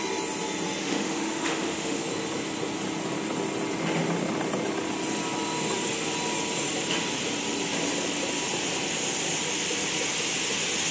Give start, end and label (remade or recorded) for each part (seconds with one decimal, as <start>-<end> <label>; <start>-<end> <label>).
0.0-0.8 recorded; 0.8-2.0 remade; 2.0-10.9 recorded